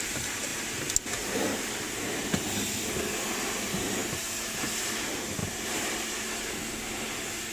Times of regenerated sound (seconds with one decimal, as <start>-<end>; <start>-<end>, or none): 4.0-4.5; 5.4-6.5